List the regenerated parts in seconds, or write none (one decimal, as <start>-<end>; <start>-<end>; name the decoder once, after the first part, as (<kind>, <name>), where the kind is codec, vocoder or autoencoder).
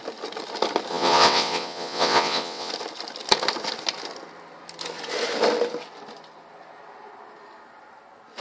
0.9-2.7 (vocoder, WaveNeXt)